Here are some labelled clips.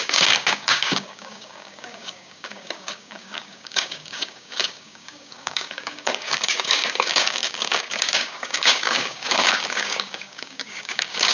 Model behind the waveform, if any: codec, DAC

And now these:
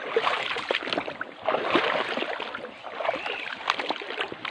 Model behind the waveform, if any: vocoder, BigVGAN v2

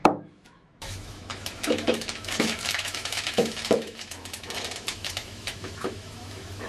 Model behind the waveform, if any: autoencoder, DAC-VAE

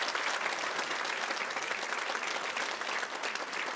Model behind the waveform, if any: none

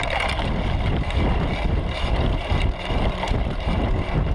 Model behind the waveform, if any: none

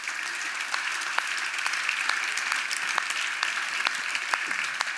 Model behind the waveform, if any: none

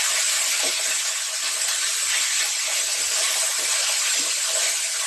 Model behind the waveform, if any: vocoder, BigVGAN v2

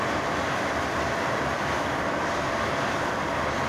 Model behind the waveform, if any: vocoder, BigVGAN v2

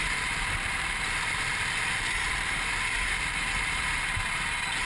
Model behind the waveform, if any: vocoder, BigVGAN v2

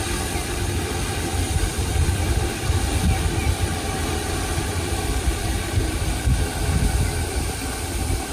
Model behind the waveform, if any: vocoder, BigVGAN v2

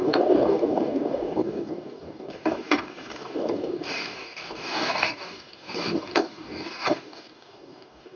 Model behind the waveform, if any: codec, DAC